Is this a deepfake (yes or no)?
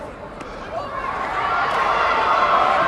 yes